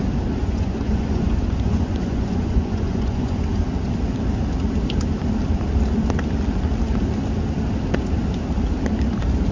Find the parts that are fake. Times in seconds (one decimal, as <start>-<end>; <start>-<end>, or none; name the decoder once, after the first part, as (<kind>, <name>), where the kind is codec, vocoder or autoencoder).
0.4-3.4 (vocoder, Vocos)